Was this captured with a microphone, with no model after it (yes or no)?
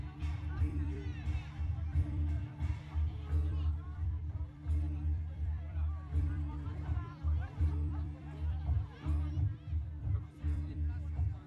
no